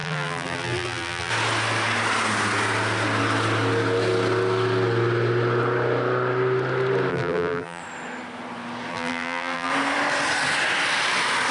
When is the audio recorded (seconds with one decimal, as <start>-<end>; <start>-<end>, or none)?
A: 1.3-7.1; 7.8-8.9; 9.7-11.5